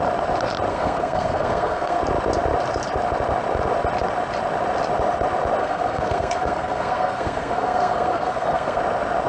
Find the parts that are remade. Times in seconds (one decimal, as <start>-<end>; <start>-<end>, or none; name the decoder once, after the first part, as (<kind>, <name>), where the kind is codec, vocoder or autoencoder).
0.7-2.0 (codec, SNAC); 5.6-8.8